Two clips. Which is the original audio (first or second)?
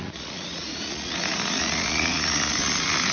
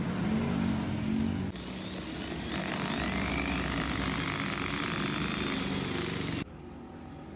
second